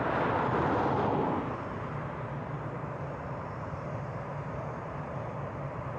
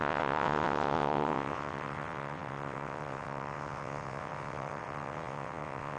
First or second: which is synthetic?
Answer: second